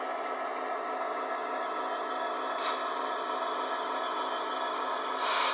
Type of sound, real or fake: real